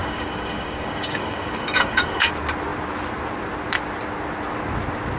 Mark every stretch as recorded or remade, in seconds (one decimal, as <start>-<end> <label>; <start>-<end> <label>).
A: 0.0-2.3 remade; 2.3-5.2 recorded